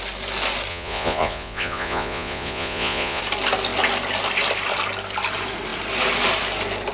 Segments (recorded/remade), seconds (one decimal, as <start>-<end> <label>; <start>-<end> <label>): 0.0-0.7 recorded; 0.7-3.2 remade; 3.2-6.9 recorded